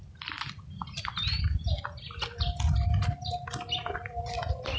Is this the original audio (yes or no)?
yes